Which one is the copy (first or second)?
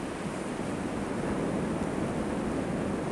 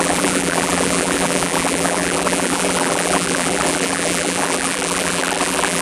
second